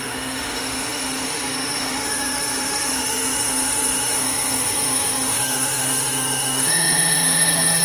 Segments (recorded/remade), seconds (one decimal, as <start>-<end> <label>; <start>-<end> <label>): 0.0-7.8 remade